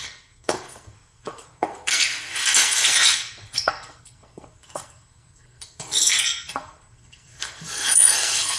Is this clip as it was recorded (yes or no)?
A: no